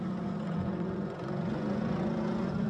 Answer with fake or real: fake